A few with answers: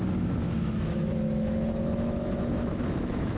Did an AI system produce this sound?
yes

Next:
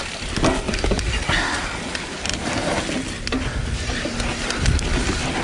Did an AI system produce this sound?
no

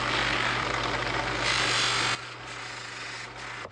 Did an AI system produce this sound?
no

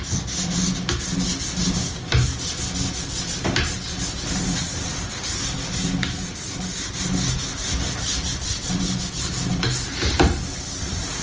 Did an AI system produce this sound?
no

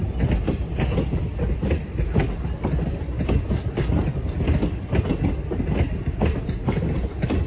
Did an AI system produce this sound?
no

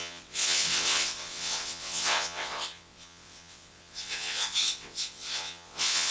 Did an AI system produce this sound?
yes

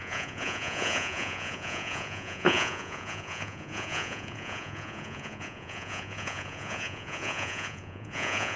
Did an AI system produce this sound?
yes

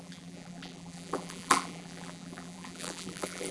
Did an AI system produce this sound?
yes